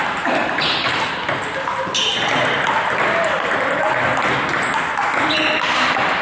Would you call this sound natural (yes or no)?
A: yes